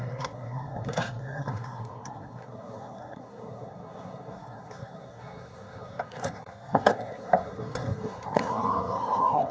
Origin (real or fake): fake